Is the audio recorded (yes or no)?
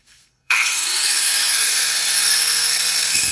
no